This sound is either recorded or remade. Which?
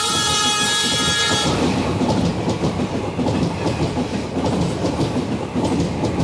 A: recorded